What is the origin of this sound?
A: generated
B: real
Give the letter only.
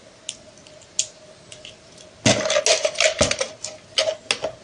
B